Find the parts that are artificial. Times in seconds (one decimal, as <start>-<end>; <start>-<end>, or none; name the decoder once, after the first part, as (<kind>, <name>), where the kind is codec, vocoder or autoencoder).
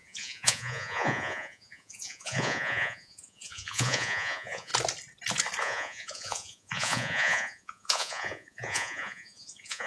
0.0-4.7 (vocoder, Vocos); 5.6-9.9